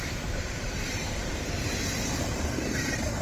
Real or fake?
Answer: fake